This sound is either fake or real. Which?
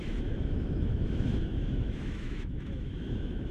fake